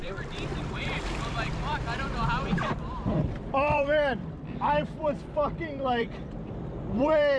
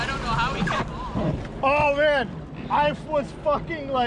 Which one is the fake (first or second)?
first